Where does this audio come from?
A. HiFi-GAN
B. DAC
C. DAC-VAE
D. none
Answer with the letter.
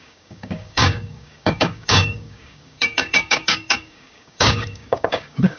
B